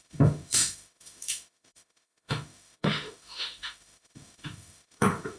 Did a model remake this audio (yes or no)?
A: yes